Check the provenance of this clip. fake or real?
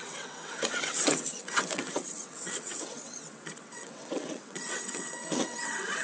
fake